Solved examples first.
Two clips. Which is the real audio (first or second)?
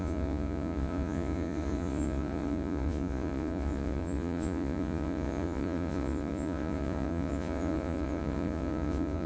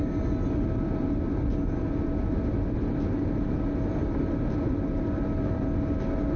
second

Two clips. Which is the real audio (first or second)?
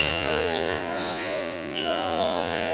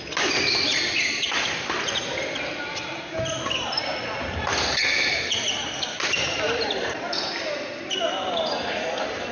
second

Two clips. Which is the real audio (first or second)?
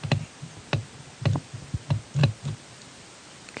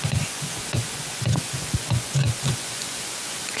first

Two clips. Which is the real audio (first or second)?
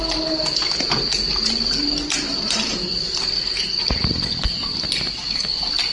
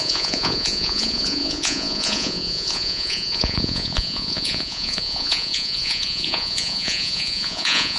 first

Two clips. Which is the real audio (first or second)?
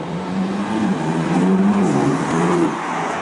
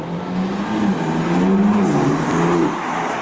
second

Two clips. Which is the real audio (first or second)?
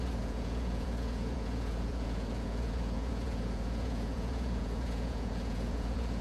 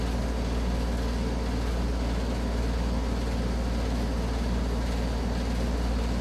second